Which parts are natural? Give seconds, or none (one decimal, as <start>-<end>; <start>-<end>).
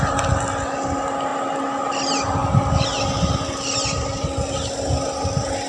0.0-5.7